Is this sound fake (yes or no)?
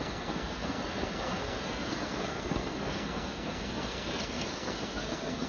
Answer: yes